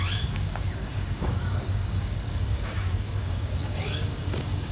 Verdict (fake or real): fake